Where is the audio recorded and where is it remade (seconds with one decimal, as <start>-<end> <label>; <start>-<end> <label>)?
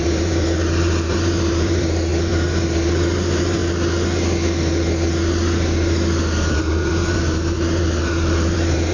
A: 0.0-3.6 remade; 3.6-6.5 recorded; 6.5-8.9 remade